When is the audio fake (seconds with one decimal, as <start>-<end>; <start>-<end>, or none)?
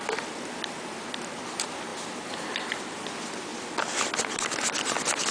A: none